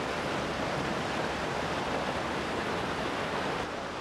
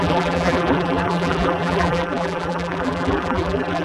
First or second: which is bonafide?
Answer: first